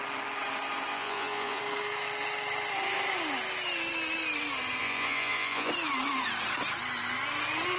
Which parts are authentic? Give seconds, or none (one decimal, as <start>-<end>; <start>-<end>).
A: 0.0-0.9; 1.6-4.8; 5.7-7.8